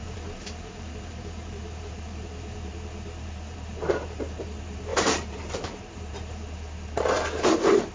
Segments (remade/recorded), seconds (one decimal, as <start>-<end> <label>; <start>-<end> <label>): 0.0-7.9 remade